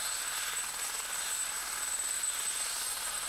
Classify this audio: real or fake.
real